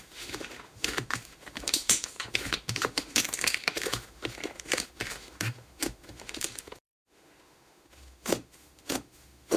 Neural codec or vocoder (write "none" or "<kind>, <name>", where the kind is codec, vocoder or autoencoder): autoencoder, DAC-VAE